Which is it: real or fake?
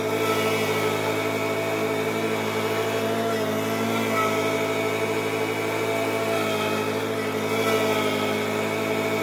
real